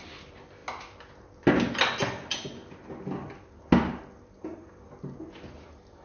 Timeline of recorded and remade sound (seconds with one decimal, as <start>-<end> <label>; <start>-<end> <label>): 0.0-6.0 recorded